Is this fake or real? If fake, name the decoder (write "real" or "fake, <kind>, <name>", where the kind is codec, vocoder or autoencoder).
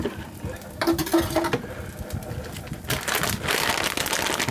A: real